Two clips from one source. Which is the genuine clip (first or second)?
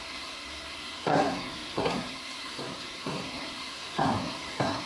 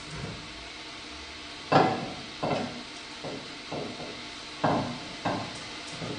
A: second